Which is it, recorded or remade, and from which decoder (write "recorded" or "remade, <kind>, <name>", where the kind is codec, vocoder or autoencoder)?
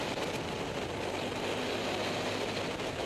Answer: recorded